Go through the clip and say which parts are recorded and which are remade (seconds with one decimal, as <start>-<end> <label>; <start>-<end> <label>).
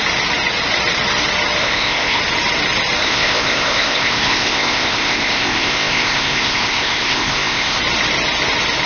0.0-1.6 recorded; 1.6-2.2 remade; 2.2-3.0 recorded; 3.0-7.8 remade; 7.8-8.9 recorded